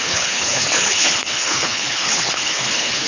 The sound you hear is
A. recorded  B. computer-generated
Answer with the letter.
B